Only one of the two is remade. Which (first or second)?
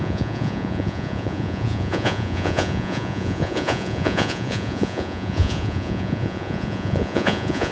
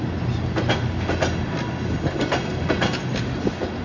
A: first